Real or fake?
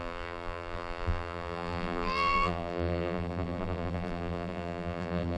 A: fake